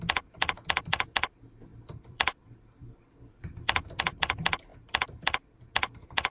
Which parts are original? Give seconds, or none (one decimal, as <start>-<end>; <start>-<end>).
0.0-1.7; 4.0-4.7; 5.7-6.3